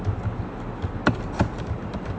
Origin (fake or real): real